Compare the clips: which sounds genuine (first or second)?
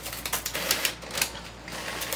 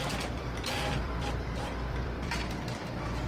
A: first